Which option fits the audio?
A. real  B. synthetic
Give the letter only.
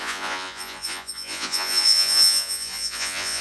B